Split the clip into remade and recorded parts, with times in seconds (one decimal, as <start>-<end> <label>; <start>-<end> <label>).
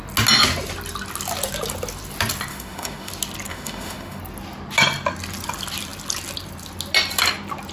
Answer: 0.0-2.5 recorded; 2.5-3.1 remade; 3.1-3.5 recorded; 3.5-4.2 remade; 4.2-7.7 recorded